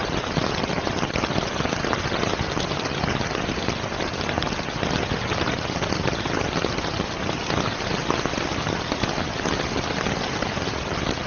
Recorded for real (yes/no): no